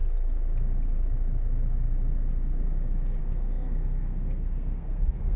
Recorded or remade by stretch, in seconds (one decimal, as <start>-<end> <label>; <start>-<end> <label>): 0.0-3.2 recorded; 3.2-5.4 remade